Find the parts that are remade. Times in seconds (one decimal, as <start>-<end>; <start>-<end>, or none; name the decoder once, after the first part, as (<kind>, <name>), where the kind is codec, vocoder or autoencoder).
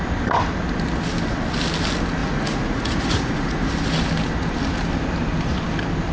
2.2-3.7 (vocoder, Vocos)